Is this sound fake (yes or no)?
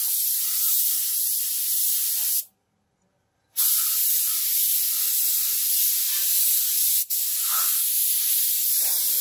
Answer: no